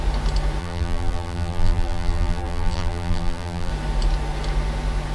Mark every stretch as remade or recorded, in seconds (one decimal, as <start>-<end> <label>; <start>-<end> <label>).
0.0-0.6 recorded; 0.6-3.7 remade; 3.7-5.1 recorded